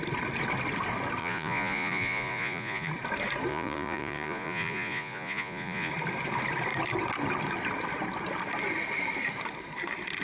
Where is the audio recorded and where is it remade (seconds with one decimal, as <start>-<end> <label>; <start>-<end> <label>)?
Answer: 0.0-1.2 recorded; 1.2-2.9 remade; 2.9-3.5 recorded; 3.5-5.9 remade; 5.9-10.2 recorded